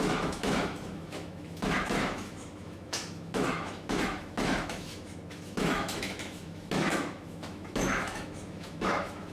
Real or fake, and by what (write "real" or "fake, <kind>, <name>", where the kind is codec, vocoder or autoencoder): fake, autoencoder, DAC-VAE